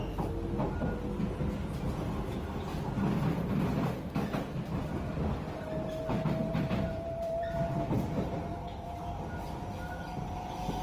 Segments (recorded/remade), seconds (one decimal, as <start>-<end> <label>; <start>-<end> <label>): 0.0-6.5 recorded; 6.5-8.0 remade; 8.0-8.5 recorded; 8.5-9.4 remade; 9.4-10.8 recorded